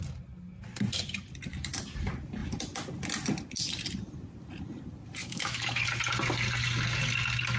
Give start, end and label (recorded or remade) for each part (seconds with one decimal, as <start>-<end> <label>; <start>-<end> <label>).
0.0-5.2 recorded; 5.2-5.8 remade; 5.8-7.6 recorded